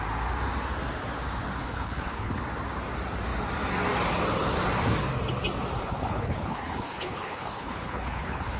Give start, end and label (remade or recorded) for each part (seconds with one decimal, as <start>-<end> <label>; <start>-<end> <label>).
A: 0.0-1.6 recorded; 1.6-2.4 remade; 2.4-5.8 recorded; 5.8-8.6 remade